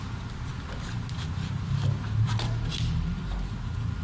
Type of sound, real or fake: real